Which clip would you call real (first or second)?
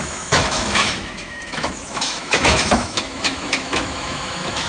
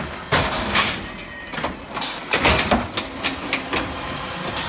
second